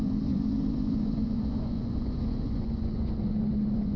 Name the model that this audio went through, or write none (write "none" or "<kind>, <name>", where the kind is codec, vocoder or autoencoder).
vocoder, Vocos